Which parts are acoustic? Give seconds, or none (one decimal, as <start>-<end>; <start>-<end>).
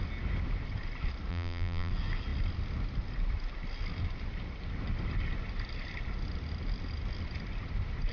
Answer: 0.0-1.3; 1.9-8.1